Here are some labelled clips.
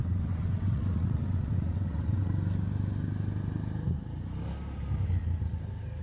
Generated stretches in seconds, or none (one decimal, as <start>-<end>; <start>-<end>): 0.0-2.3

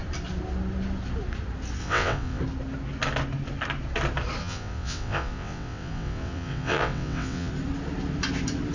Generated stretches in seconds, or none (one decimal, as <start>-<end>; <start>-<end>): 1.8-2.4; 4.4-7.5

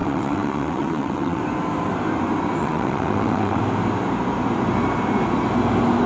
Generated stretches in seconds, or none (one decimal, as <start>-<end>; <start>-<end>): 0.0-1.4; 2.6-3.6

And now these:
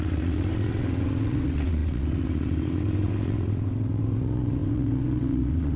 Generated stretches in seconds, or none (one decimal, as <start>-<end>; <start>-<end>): 0.0-5.8